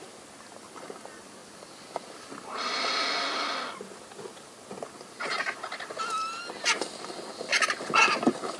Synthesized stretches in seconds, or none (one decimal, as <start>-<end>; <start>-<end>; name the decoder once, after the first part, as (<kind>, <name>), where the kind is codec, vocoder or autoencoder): none

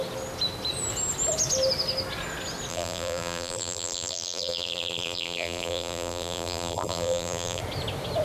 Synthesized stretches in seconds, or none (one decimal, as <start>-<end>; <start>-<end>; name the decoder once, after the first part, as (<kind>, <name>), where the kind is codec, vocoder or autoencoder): 2.7-7.6 (vocoder, BigVGAN v2)

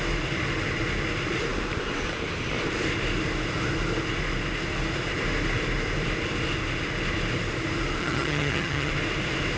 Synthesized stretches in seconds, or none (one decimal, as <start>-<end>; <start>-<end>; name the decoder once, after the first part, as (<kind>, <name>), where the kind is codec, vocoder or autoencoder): 8.0-8.9 (vocoder, HiFi-GAN)

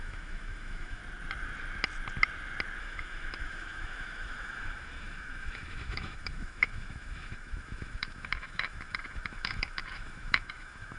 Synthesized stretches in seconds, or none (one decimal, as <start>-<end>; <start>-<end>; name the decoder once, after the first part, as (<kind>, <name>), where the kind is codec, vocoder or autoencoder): 0.0-1.0 (autoencoder, DAC-VAE); 2.8-11.0

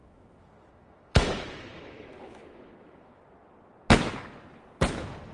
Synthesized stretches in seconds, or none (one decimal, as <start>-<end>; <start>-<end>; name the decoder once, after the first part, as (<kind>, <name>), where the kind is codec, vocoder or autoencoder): 0.0-3.2 (autoencoder, DAC-VAE)

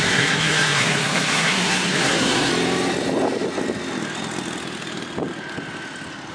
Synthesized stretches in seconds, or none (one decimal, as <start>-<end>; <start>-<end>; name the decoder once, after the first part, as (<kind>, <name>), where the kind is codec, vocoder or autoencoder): 0.0-2.5 (codec, SNAC)

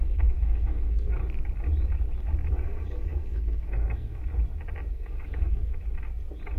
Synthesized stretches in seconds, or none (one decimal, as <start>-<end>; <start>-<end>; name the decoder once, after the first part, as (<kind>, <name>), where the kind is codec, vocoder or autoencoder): 0.0-1.2 (codec, SNAC); 2.5-4.2; 4.9-5.7